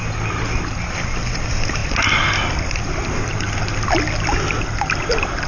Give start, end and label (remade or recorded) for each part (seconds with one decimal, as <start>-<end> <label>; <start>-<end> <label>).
0.0-5.5 recorded